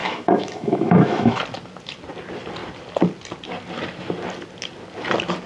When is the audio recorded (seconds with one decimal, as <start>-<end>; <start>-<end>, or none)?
1.4-5.5